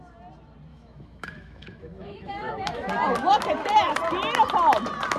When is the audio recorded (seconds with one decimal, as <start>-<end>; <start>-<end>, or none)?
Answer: 0.0-0.7; 2.9-5.2